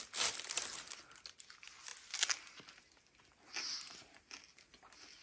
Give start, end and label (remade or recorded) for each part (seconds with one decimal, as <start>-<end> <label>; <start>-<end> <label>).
0.0-5.2 recorded